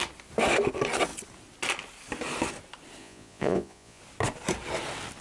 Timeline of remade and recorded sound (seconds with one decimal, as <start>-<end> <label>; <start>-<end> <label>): 0.0-3.0 recorded; 3.0-4.0 remade; 4.0-5.2 recorded